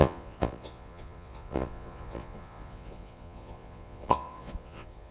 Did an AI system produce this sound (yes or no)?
yes